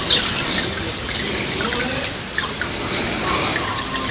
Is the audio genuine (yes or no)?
yes